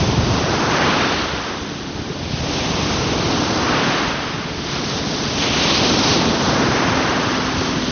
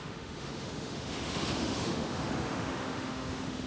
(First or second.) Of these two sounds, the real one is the first